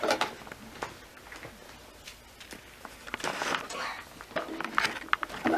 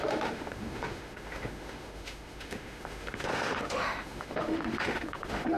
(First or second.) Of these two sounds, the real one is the first